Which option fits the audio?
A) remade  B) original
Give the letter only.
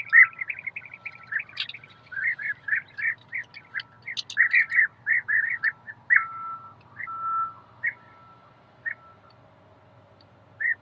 B